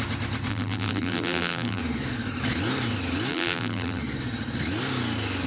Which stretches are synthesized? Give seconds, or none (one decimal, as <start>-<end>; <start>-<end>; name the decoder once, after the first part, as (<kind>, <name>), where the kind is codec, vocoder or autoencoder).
0.5-1.8 (vocoder, BigVGAN v2); 3.3-4.0